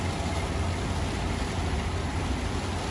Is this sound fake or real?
real